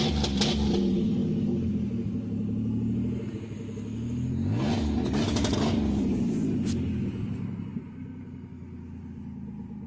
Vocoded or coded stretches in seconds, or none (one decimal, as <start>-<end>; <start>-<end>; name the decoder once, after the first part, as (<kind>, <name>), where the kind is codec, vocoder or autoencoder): none

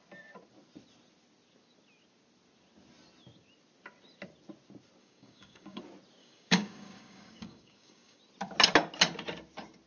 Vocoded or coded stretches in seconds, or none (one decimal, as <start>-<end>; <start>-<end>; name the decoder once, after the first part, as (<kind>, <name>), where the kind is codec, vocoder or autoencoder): 5.0-5.8 (codec, DAC); 6.2-8.2

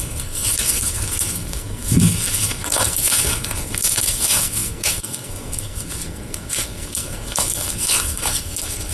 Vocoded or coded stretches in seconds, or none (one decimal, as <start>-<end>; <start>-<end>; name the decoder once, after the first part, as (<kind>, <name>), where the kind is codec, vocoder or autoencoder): 0.0-8.9 (codec, SNAC)

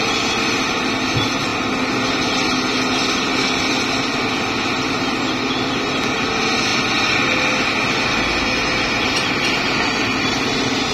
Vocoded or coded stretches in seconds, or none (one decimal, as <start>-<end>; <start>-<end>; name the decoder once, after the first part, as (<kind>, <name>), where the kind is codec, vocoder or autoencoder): none

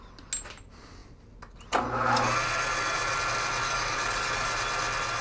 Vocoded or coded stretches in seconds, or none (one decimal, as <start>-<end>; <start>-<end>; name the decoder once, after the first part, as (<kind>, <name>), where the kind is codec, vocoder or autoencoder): 3.6-4.5 (codec, DAC)